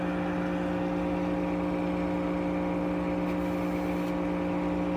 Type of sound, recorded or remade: recorded